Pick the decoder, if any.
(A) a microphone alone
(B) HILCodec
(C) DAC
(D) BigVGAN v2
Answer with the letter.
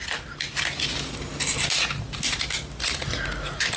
A